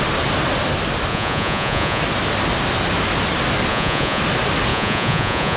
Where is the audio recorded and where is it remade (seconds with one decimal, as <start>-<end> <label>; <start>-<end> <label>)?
0.0-1.1 recorded; 1.1-2.0 remade; 2.0-3.7 recorded; 3.7-4.2 remade; 4.2-4.7 recorded; 4.7-5.6 remade

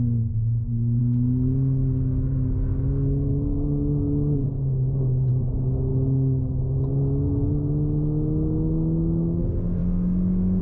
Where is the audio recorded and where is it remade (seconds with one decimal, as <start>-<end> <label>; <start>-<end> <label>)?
0.0-10.6 recorded

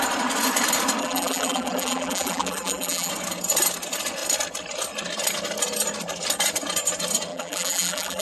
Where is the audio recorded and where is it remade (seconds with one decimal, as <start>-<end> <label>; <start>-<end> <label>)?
0.0-1.0 recorded; 1.0-3.1 remade; 3.1-7.3 recorded; 7.3-8.2 remade

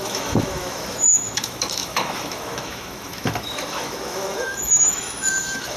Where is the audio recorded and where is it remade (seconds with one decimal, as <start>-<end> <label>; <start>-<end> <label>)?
0.0-5.8 remade

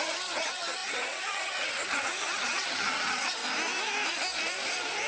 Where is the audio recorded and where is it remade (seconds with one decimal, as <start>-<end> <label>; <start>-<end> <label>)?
0.0-3.4 remade; 3.4-5.1 recorded